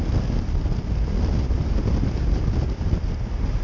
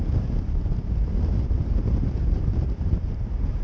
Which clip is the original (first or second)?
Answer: first